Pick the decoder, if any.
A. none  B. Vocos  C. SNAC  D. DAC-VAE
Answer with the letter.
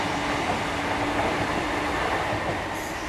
A